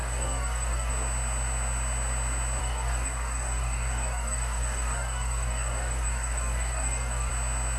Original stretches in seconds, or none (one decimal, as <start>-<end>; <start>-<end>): 0.9-2.6; 7.3-7.8